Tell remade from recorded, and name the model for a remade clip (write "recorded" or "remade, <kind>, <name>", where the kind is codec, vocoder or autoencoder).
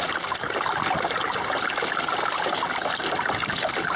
recorded